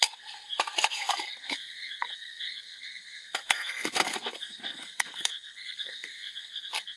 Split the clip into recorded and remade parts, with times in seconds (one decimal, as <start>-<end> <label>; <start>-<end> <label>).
0.0-7.0 remade